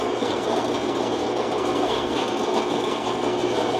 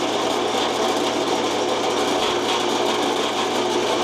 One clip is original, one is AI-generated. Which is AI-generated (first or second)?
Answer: first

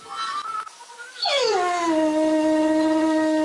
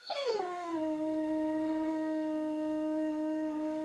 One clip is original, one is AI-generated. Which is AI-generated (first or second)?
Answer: second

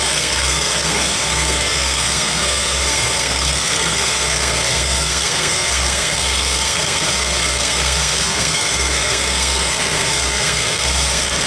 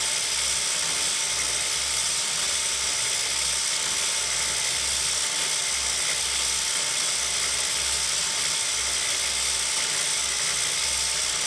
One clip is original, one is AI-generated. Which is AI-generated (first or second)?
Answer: first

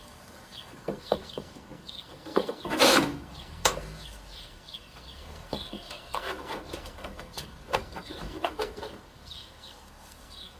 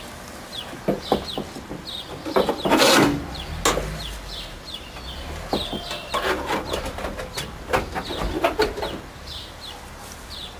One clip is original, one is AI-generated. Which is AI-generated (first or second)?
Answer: first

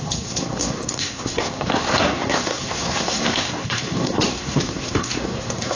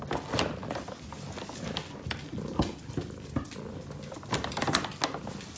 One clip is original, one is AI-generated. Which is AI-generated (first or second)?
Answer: first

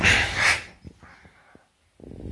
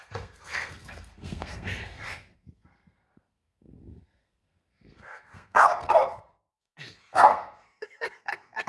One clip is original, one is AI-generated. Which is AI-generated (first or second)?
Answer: second